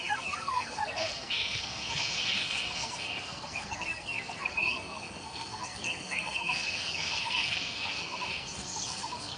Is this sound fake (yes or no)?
yes